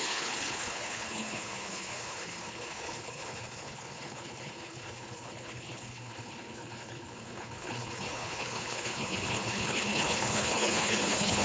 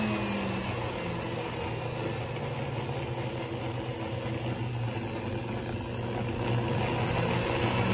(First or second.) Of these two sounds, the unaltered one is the second